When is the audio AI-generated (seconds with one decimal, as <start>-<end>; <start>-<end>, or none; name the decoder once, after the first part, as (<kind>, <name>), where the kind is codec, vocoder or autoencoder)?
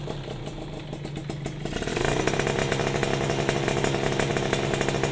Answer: none